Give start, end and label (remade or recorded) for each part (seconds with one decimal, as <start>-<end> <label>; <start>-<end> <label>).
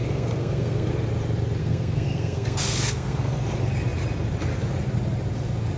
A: 0.0-0.9 remade; 0.9-1.6 recorded; 1.6-3.4 remade; 3.4-5.8 recorded